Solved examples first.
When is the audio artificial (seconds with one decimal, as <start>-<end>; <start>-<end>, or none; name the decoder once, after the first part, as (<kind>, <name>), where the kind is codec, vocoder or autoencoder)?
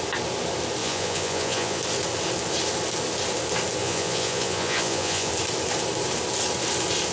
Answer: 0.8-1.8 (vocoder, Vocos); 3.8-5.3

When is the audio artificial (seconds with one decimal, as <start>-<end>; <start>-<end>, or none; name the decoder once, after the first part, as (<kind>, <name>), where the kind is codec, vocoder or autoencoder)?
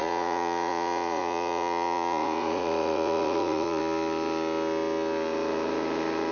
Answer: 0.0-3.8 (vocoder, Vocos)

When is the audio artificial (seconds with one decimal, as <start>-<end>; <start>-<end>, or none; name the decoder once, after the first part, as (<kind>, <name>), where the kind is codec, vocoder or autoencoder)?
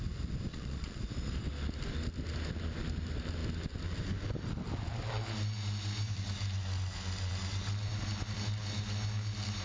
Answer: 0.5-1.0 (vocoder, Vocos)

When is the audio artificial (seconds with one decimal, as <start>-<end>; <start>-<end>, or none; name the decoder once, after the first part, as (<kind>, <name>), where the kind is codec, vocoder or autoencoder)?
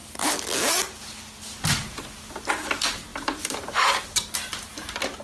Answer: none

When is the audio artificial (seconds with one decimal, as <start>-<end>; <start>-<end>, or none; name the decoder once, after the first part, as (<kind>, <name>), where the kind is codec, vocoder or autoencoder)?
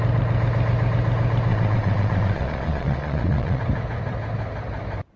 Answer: 1.5-3.6 (vocoder, Vocos)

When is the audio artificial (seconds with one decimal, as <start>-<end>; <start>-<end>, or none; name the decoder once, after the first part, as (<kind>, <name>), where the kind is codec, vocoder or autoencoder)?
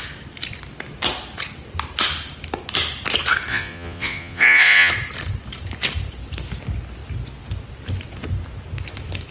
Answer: 3.5-4.9 (vocoder, Vocos)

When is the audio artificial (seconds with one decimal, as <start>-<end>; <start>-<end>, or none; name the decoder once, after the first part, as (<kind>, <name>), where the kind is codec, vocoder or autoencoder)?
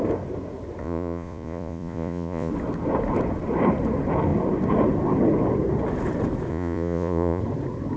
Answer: 0.8-2.5 (vocoder, Vocos); 6.5-7.4